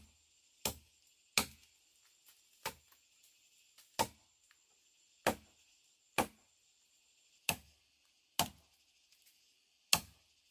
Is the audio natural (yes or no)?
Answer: yes